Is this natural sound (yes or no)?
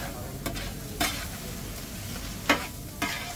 yes